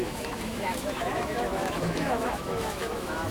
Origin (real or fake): fake